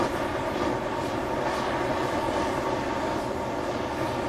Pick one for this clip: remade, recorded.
remade